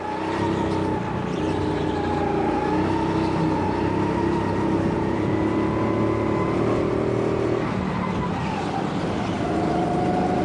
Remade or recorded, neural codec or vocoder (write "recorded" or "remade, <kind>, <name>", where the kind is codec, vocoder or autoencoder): recorded